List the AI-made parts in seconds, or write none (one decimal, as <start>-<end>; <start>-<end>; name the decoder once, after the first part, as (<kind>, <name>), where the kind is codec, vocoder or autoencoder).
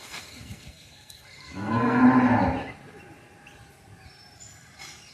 0.0-2.0 (codec, SNAC)